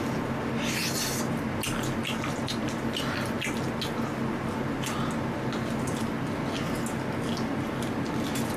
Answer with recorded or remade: recorded